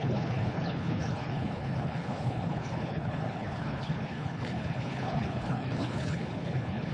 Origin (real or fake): fake